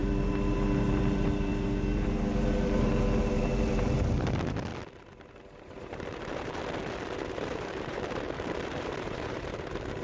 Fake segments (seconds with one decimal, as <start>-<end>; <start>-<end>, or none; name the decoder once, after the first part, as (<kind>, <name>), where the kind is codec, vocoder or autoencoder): 0.0-4.7 (vocoder, BigVGAN v2); 5.6-6.6; 7.3-10.0